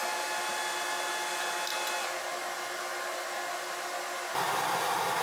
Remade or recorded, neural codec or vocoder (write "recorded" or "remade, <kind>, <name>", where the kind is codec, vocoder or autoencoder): recorded